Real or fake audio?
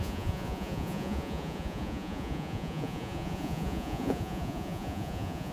fake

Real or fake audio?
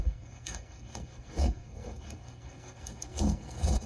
fake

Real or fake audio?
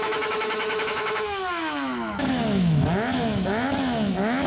fake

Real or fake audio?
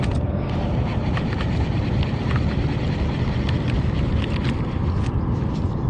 real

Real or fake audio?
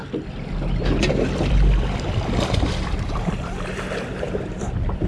fake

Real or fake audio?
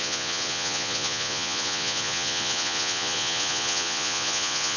fake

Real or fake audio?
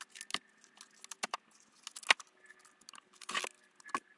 real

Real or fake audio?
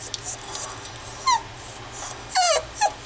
real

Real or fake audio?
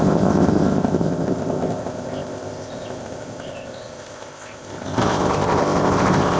fake